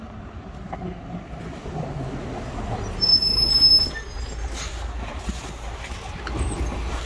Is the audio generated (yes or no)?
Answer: no